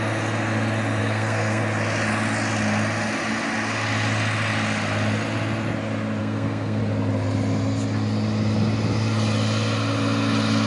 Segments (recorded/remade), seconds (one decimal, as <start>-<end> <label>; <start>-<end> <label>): 0.0-1.0 recorded; 1.0-1.6 remade; 1.6-6.2 recorded; 6.2-6.8 remade; 6.8-10.7 recorded